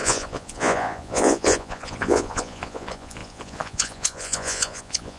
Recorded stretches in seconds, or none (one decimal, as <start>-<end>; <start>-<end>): none